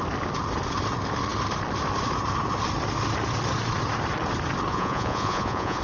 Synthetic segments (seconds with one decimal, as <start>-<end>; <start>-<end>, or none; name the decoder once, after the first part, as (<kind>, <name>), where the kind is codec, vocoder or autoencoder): 4.7-5.8 (vocoder, Vocos)